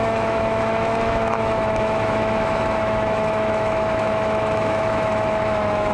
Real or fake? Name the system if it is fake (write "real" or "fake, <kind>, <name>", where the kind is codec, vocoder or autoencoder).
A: fake, autoencoder, DAC-VAE